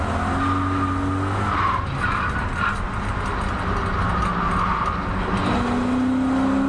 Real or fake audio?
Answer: real